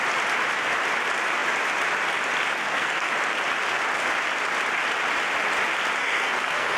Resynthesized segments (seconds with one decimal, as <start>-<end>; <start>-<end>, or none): 2.6-3.1; 6.0-6.8